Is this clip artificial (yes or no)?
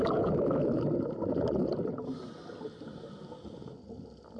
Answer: no